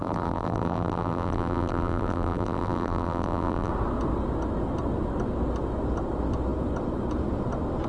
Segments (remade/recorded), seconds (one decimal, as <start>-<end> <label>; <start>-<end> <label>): 0.0-3.7 remade; 3.7-7.9 recorded